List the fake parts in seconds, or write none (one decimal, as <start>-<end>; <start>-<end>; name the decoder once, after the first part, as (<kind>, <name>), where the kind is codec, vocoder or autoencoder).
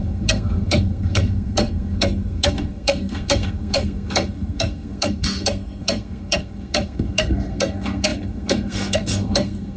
0.0-9.8 (codec, SNAC)